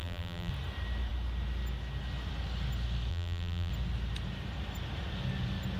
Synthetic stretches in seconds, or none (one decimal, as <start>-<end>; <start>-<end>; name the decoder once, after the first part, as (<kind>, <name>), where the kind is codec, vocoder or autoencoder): 0.0-0.5 (vocoder, BigVGAN v2); 3.1-3.7